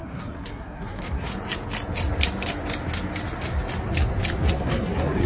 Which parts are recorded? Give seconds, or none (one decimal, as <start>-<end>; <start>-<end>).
1.3-4.5